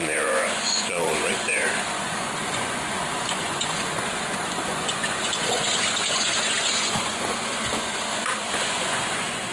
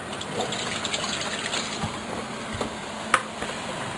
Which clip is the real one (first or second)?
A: second